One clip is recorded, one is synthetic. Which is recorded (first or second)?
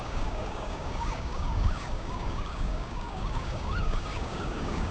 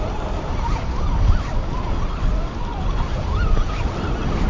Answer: second